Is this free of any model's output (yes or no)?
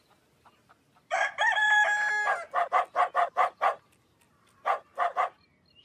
yes